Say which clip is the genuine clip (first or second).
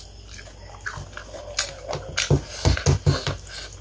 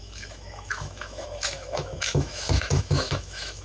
first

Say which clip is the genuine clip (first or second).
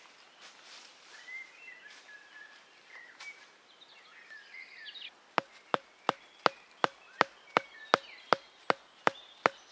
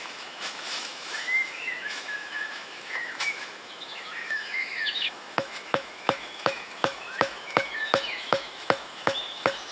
first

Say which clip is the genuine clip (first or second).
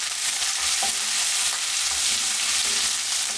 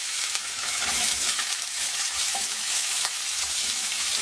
first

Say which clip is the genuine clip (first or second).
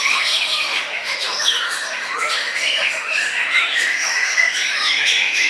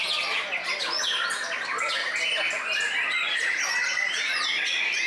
second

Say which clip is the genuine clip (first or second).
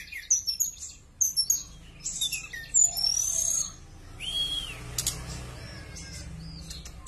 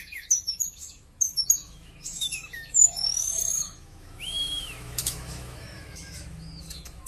first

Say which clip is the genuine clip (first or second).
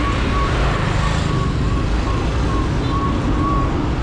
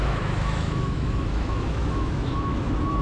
first